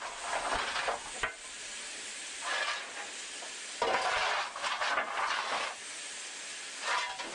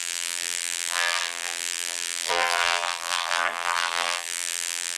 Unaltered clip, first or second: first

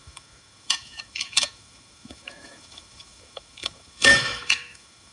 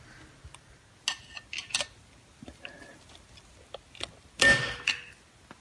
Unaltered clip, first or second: second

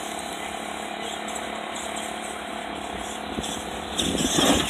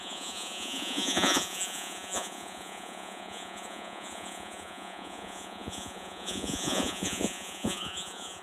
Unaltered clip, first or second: first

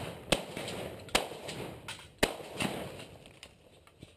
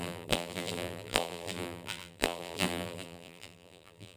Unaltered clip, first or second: first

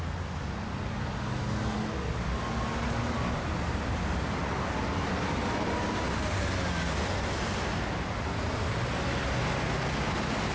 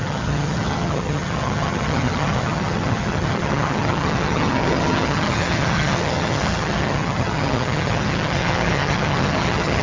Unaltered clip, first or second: first